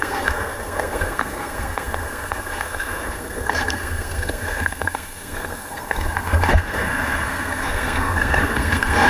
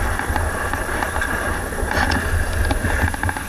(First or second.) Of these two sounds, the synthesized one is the first